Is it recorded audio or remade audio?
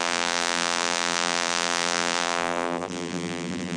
remade